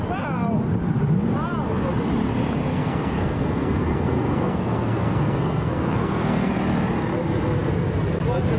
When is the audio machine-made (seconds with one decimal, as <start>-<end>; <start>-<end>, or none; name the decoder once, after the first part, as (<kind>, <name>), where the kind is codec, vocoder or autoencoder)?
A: 2.7-6.5 (codec, SNAC)